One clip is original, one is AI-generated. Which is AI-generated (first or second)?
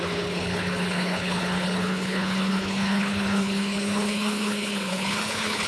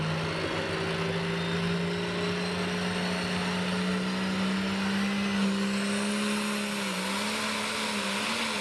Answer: first